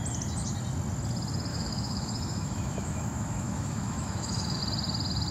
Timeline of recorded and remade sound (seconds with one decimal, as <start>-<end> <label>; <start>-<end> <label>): 0.0-1.5 recorded; 1.5-4.6 remade; 4.6-5.3 recorded